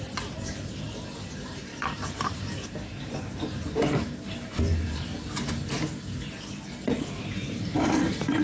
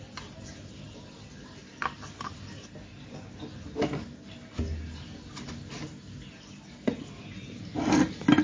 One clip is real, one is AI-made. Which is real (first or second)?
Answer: second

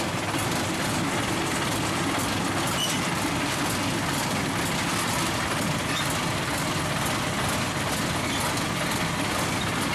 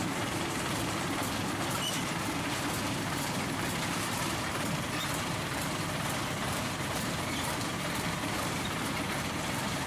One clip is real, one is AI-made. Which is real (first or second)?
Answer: first